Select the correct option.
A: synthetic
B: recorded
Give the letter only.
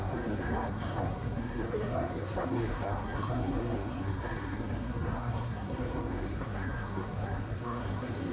A